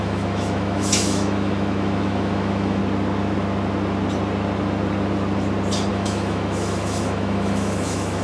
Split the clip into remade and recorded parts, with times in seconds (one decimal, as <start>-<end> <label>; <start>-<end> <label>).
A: 0.0-2.8 remade; 2.8-5.9 recorded; 5.9-8.2 remade